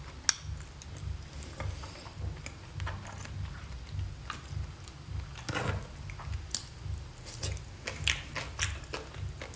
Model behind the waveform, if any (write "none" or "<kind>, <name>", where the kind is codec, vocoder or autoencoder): none